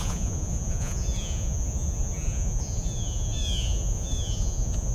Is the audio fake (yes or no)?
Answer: yes